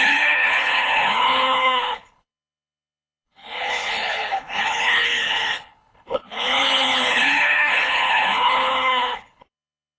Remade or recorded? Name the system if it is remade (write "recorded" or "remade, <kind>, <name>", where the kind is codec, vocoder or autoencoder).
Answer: remade, codec, HILCodec